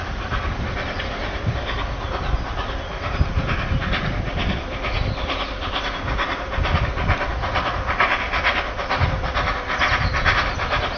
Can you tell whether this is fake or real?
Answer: real